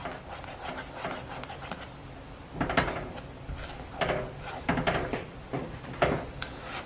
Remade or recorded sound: recorded